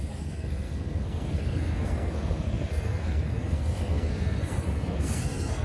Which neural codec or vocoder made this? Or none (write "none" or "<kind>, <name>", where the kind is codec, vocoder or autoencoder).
codec, SNAC